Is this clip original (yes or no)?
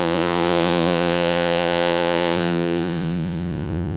no